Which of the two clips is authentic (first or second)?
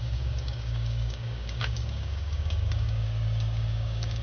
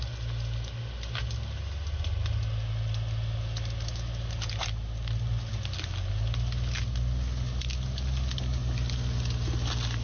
second